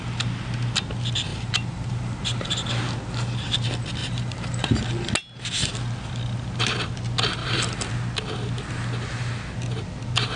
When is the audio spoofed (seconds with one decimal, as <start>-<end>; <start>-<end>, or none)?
1.3-2.7; 4.0-4.8; 7.4-7.9